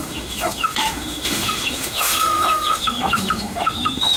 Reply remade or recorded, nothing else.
remade